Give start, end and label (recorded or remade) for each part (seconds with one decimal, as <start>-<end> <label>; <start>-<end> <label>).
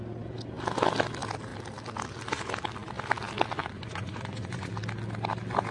0.0-3.6 recorded; 3.6-4.7 remade; 4.7-5.7 recorded